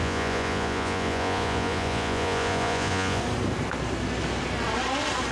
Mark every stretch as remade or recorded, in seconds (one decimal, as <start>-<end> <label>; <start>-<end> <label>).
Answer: 0.0-3.2 remade; 3.2-5.3 recorded